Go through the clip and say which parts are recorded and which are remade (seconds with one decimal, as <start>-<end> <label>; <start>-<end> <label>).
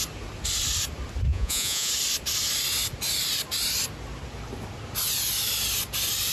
0.0-1.3 recorded; 1.3-1.9 remade; 1.9-6.3 recorded